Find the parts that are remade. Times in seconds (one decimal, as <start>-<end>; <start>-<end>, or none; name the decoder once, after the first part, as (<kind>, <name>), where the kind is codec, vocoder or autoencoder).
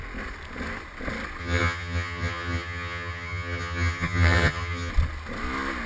1.4-4.9 (vocoder, HiFi-GAN)